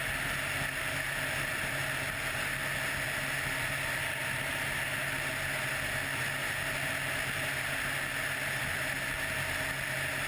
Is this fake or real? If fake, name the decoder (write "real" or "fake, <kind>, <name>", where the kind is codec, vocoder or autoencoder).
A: real